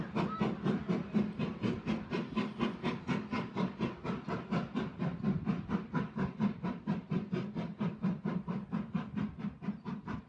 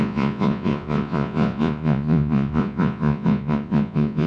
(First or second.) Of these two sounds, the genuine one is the first